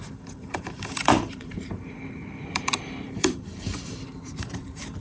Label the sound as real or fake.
fake